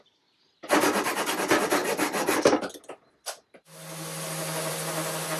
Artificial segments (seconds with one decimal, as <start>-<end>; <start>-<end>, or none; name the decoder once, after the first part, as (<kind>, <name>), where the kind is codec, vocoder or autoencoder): none